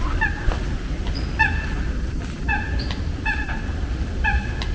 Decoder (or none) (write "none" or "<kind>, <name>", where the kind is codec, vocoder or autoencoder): none